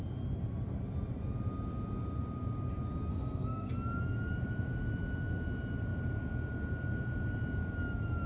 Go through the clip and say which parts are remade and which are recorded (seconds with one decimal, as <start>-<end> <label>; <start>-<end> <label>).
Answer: 0.0-3.1 recorded; 3.1-3.7 remade; 3.7-8.3 recorded